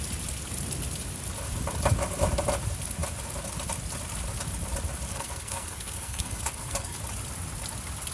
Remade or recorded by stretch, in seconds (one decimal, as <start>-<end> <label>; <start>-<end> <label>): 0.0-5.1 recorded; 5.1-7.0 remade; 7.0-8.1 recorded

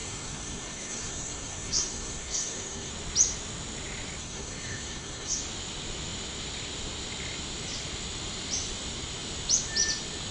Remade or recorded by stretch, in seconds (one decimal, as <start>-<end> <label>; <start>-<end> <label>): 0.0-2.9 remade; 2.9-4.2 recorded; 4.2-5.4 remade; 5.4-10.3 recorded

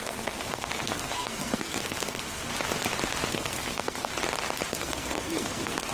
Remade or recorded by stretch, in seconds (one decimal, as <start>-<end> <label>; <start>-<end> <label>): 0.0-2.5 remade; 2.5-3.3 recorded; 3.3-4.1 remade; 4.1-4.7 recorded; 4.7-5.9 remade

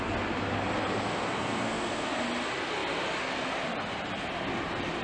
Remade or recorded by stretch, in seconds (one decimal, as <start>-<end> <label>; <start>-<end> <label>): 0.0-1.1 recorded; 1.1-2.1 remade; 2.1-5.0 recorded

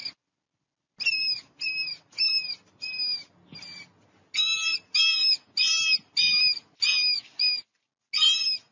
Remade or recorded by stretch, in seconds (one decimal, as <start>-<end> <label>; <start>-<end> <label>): 0.0-8.7 recorded